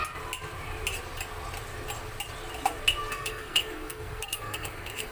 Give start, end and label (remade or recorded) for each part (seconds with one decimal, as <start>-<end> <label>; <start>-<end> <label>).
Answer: 0.0-3.1 recorded; 3.1-5.1 remade